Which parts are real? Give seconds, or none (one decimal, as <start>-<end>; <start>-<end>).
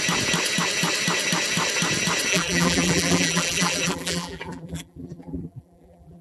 0.0-2.3